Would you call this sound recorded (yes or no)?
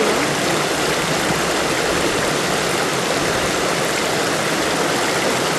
yes